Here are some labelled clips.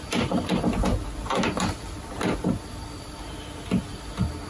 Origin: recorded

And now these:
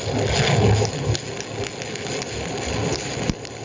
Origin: recorded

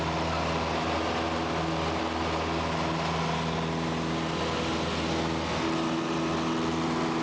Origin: recorded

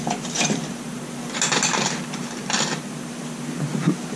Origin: recorded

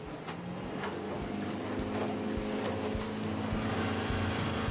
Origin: recorded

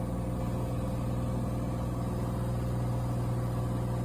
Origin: recorded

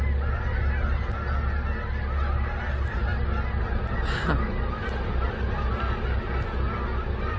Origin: recorded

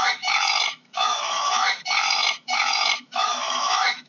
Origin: remade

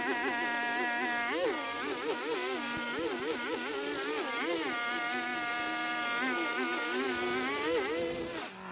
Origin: recorded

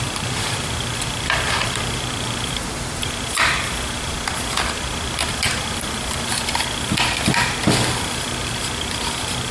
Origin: remade